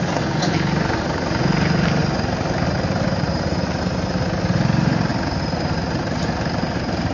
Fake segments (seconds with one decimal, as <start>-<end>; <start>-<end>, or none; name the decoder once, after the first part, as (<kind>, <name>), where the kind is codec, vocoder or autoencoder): none